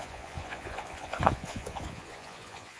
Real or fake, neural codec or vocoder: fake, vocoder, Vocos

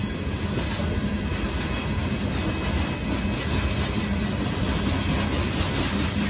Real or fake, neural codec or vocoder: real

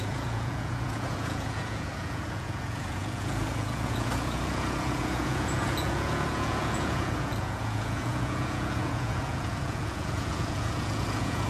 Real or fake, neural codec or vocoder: fake, vocoder, Vocos